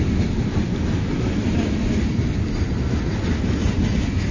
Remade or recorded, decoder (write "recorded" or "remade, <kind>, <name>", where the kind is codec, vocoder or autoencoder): recorded